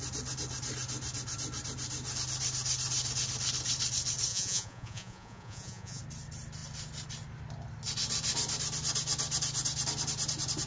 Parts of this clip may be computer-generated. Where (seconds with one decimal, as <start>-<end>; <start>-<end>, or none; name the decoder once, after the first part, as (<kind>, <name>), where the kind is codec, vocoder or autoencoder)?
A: 4.3-6.0 (vocoder, Vocos)